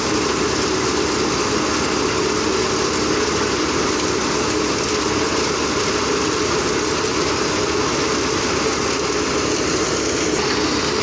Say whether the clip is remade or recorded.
recorded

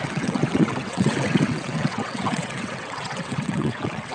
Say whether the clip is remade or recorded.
remade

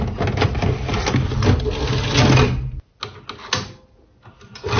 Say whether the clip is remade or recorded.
recorded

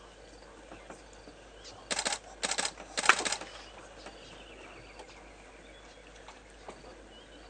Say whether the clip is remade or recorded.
recorded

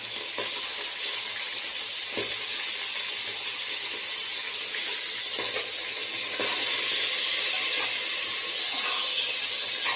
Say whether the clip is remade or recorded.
recorded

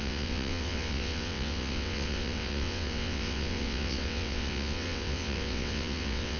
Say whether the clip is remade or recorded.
remade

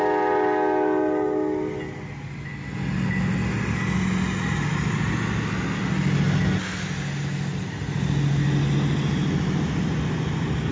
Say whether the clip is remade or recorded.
recorded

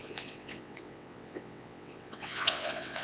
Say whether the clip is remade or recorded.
remade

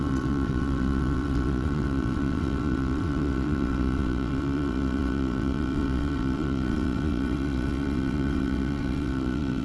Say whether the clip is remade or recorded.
remade